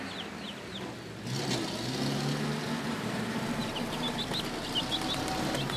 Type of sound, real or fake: real